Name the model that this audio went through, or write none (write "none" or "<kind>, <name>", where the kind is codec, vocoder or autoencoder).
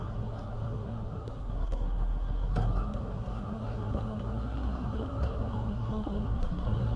codec, SNAC